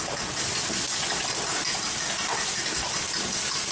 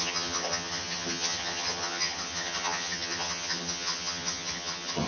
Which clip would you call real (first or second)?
first